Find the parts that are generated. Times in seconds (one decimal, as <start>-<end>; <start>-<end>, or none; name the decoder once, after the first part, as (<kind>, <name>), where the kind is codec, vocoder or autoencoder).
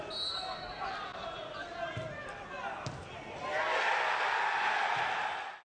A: none